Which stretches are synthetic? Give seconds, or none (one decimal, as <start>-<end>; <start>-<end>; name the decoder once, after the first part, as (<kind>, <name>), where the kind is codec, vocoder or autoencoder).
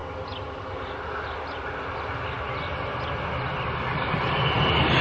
none